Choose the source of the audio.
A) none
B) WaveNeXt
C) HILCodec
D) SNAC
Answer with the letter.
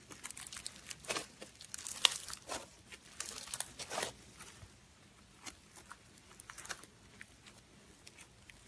A